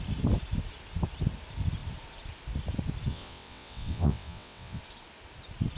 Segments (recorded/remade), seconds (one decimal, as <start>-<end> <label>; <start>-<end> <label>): 0.0-3.1 recorded; 3.1-4.8 remade; 4.8-5.8 recorded